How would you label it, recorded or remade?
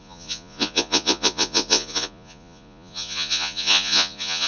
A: remade